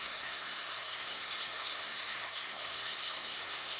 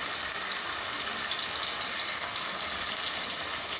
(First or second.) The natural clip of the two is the second